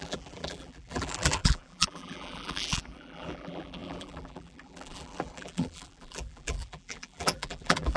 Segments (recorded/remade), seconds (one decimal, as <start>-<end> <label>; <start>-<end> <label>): 0.0-8.0 remade